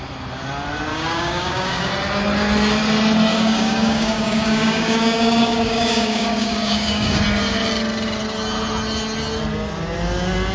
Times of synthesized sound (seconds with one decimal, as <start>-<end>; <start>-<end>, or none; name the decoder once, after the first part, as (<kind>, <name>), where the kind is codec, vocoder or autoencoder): 0.9-1.9 (codec, DAC); 3.3-7.2